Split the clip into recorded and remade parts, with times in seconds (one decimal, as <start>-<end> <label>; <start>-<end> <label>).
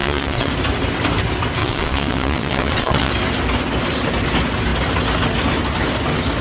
0.0-0.5 remade; 0.5-1.6 recorded; 1.6-3.1 remade; 3.1-6.4 recorded